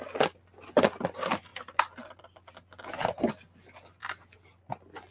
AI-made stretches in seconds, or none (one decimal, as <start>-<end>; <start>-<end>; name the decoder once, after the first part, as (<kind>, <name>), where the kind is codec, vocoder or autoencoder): none